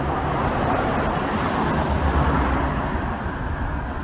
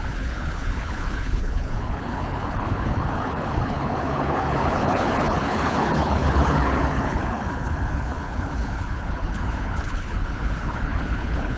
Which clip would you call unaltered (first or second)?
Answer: first